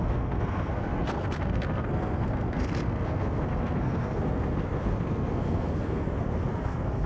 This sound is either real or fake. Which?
fake